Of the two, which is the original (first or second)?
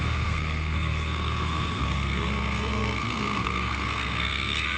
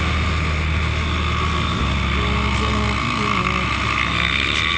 second